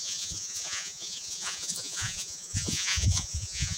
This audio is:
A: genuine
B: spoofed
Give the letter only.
B